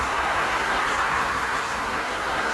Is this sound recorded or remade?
remade